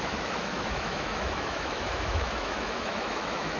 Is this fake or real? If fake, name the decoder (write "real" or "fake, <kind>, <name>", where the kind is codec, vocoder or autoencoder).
fake, autoencoder, DAC-VAE